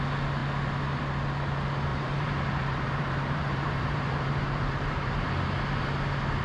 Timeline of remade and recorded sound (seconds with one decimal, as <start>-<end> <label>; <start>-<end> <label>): 0.0-1.9 recorded; 1.9-5.3 remade; 5.3-6.4 recorded